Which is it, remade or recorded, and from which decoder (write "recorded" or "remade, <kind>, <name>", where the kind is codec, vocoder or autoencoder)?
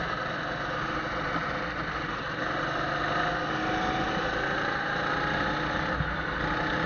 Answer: recorded